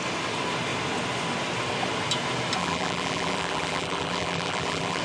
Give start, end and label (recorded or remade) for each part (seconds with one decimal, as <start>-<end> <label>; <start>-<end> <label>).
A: 0.0-2.6 recorded; 2.6-5.0 remade